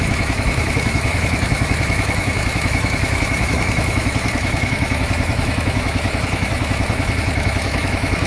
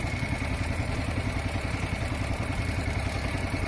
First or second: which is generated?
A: first